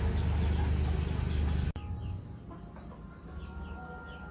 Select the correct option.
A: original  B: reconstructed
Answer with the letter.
A